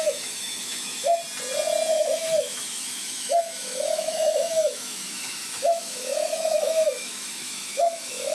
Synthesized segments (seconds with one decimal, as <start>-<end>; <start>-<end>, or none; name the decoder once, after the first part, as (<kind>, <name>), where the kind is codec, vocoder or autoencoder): 0.0-1.2 (autoencoder, DAC-VAE); 1.9-8.3